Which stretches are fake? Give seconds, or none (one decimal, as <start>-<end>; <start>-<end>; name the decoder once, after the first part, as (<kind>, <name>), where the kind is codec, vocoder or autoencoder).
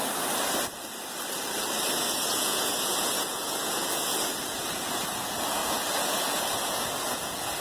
2.1-7.6 (vocoder, Vocos)